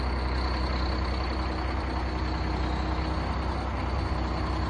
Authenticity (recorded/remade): recorded